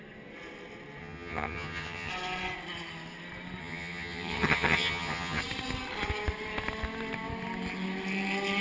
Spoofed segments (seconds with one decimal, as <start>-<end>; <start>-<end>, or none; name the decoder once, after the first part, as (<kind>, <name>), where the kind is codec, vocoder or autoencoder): 1.0-2.1 (vocoder, HiFi-GAN); 3.6-5.4